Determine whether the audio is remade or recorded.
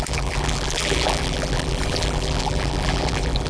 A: remade